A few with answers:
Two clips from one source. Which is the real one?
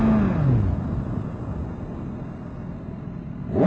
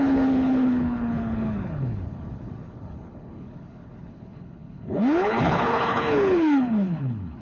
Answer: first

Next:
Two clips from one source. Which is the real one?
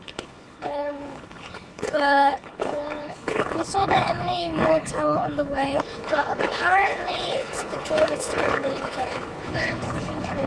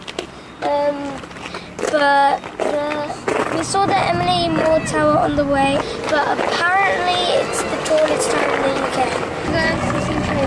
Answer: second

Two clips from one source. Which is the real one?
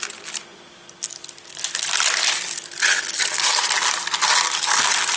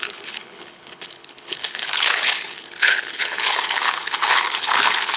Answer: first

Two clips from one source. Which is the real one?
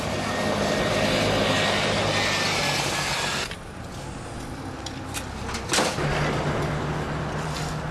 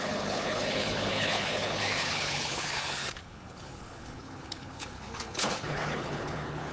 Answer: first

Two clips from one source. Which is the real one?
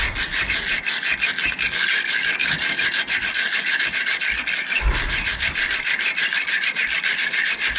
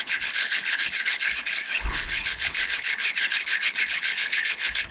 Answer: first